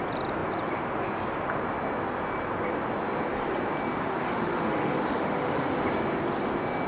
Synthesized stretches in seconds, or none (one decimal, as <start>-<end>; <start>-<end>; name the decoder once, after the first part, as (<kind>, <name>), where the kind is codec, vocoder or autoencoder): 4.1-5.7 (autoencoder, DAC-VAE)